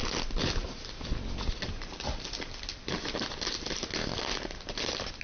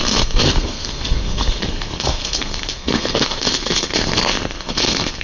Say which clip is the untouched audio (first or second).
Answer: first